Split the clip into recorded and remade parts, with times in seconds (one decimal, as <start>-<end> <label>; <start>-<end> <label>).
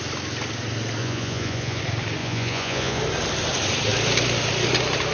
0.0-1.0 recorded; 1.0-1.8 remade; 1.8-2.2 recorded; 2.2-3.0 remade; 3.0-5.1 recorded